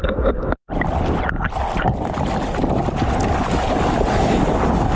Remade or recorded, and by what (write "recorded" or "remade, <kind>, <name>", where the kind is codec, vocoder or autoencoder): recorded